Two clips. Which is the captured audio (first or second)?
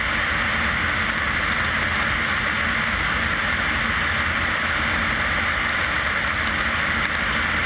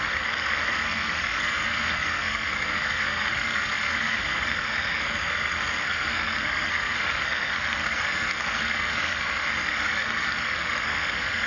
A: first